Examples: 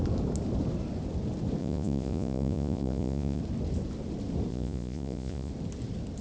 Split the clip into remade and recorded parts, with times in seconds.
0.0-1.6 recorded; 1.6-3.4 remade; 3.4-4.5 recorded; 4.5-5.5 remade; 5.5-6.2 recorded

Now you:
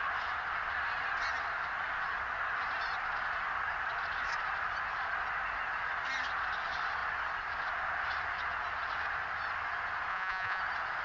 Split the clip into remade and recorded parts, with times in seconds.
0.0-10.1 recorded; 10.1-10.6 remade; 10.6-11.0 recorded

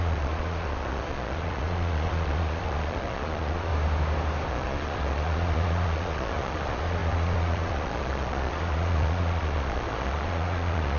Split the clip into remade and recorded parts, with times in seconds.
0.0-3.7 remade; 3.7-4.5 recorded; 4.5-11.0 remade

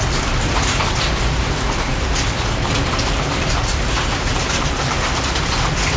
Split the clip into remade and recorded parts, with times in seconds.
0.0-6.0 recorded

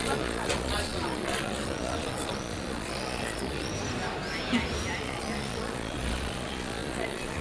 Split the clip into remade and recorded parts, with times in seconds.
0.0-3.7 remade; 3.7-5.0 recorded; 5.0-7.4 remade

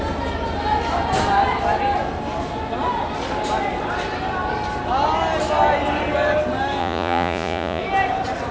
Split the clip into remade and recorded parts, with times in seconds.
0.0-6.8 recorded; 6.8-7.8 remade; 7.8-8.5 recorded

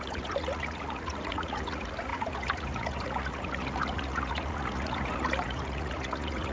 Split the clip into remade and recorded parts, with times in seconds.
0.0-6.5 remade